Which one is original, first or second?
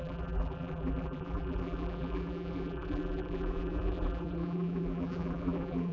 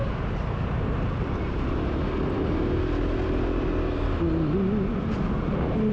second